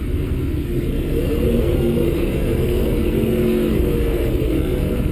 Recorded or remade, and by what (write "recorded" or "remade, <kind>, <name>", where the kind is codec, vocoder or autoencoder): remade, codec, SNAC